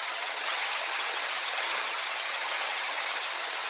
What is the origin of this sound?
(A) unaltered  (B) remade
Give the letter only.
B